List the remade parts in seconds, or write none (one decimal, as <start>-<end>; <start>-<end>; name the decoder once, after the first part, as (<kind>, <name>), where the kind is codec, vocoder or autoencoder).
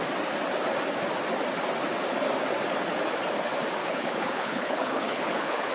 3.8-5.7 (codec, HILCodec)